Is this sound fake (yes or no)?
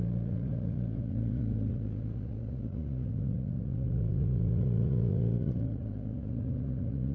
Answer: yes